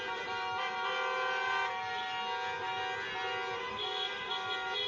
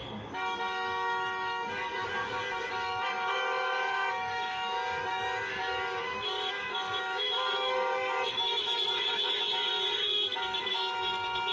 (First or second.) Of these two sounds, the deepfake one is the second